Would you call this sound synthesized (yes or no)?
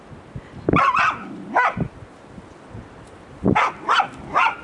no